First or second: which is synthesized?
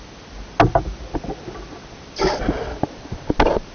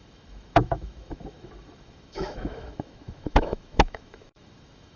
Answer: second